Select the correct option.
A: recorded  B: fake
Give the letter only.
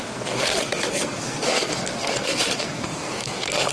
B